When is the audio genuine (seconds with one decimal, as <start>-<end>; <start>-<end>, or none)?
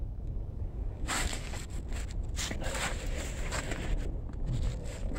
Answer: 1.7-4.8